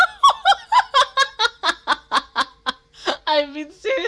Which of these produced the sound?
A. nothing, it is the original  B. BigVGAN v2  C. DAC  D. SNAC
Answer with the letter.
B